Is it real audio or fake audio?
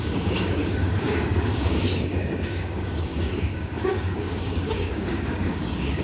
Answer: fake